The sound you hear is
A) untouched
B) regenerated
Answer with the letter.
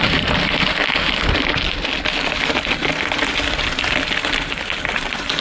A